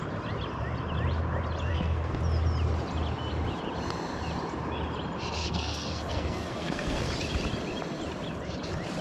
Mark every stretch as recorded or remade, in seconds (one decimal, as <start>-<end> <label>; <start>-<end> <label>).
0.0-1.7 recorded; 1.7-2.2 remade; 2.2-5.4 recorded; 5.4-7.1 remade; 7.1-9.0 recorded